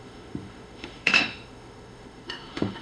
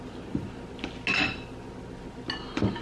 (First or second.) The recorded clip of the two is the second